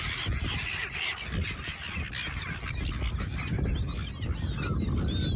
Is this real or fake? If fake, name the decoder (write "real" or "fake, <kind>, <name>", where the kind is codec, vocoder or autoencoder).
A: real